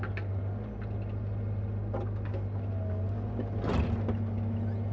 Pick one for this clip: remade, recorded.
recorded